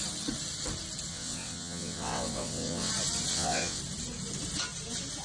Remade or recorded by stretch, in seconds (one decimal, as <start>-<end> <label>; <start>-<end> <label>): 0.0-1.1 recorded; 1.1-2.9 remade; 2.9-3.3 recorded; 3.3-3.8 remade; 3.8-5.2 recorded